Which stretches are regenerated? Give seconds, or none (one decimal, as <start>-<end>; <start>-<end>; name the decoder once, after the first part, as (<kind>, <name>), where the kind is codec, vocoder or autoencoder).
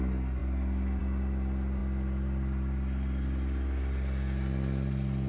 none